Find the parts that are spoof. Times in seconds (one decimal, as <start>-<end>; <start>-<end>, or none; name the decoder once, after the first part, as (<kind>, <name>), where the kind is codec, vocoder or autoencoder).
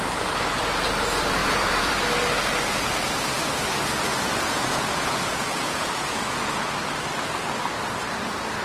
1.4-1.9 (vocoder, Vocos); 4.1-6.7